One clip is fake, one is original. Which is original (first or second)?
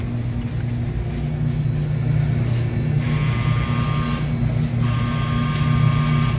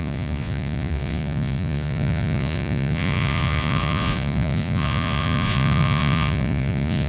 first